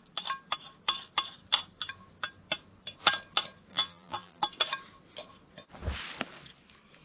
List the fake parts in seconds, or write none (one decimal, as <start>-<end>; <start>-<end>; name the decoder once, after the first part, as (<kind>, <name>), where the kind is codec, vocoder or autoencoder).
3.7-4.4 (vocoder, BigVGAN v2)